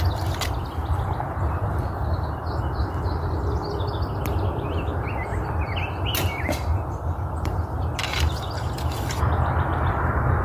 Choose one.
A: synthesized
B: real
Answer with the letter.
B